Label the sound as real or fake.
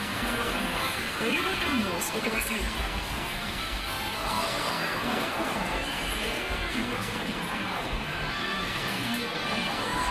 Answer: fake